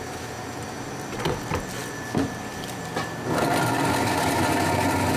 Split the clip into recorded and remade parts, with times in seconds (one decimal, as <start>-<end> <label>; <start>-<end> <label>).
0.0-5.2 recorded